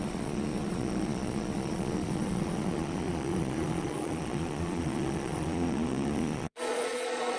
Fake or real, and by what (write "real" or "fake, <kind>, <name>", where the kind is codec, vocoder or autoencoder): fake, vocoder, Vocos